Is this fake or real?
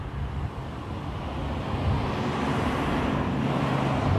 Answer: real